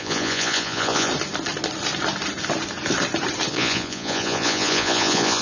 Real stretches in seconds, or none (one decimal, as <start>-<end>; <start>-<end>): 1.1-3.5